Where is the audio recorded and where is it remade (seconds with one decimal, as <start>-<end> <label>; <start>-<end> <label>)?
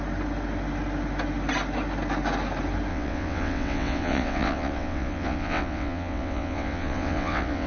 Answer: 0.0-2.9 recorded; 2.9-7.7 remade